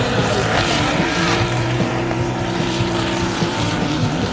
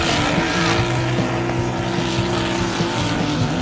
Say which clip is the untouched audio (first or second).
second